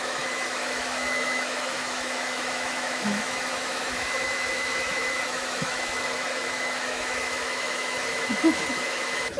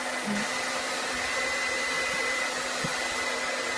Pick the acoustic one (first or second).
second